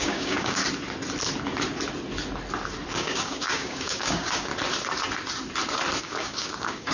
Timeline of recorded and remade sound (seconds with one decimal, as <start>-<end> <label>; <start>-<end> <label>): 0.0-0.6 remade; 0.6-2.9 recorded; 2.9-4.5 remade; 4.5-6.0 recorded; 6.0-6.9 remade